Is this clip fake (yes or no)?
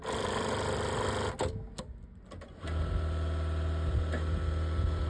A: no